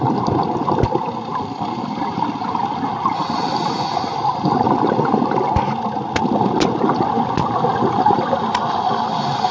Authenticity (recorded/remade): recorded